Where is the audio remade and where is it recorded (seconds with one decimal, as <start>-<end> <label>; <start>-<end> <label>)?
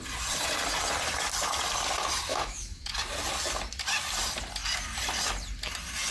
0.0-2.3 recorded; 2.3-2.9 remade; 2.9-6.1 recorded